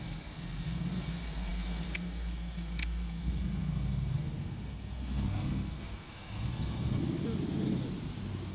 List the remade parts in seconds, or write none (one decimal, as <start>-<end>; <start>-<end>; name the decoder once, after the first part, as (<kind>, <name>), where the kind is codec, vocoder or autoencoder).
0.0-7.0 (codec, SNAC)